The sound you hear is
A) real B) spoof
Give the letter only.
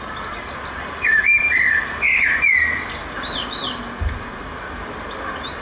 A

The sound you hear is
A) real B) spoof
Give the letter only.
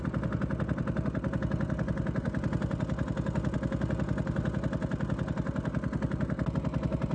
A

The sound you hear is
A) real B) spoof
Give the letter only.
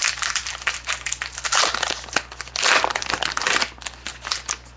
A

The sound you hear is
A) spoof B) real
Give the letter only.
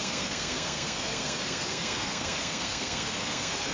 A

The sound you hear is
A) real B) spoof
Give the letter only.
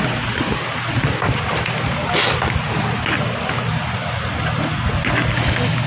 A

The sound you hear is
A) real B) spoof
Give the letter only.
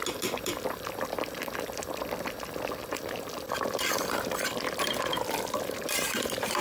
B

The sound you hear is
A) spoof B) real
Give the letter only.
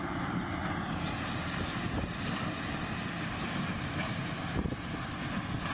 B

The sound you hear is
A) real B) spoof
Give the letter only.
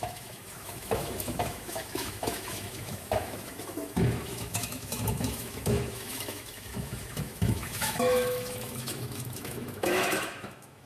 B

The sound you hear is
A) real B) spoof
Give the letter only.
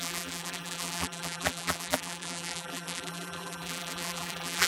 B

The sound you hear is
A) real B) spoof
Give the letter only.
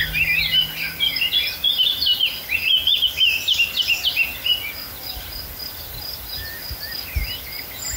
A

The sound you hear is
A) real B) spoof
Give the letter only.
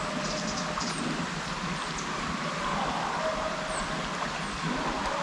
A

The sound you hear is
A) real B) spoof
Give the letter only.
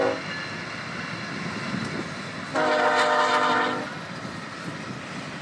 A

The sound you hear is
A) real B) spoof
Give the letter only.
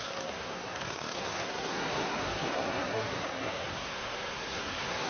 B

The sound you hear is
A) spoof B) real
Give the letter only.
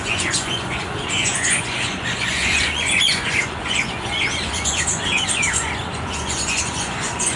A